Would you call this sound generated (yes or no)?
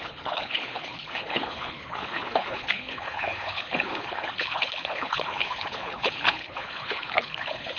yes